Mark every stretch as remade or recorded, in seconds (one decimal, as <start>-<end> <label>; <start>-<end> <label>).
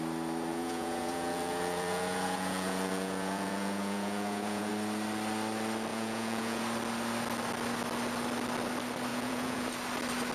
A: 0.0-0.5 recorded; 0.5-4.7 remade; 4.7-5.9 recorded; 5.9-6.6 remade; 6.6-9.1 recorded; 9.1-9.7 remade; 9.7-10.3 recorded